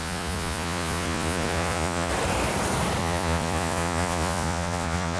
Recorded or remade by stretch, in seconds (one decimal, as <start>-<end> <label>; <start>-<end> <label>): 0.0-2.1 remade; 2.1-3.0 recorded; 3.0-5.2 remade